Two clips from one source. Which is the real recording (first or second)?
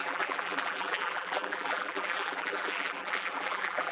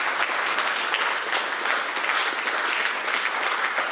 second